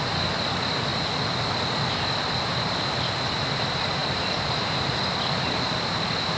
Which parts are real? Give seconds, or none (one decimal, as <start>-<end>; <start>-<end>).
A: 0.0-4.0; 5.0-6.4